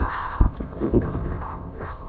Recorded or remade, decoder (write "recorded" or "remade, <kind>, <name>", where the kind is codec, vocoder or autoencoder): remade, codec, ZipCodec